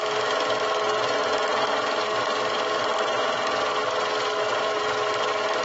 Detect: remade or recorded remade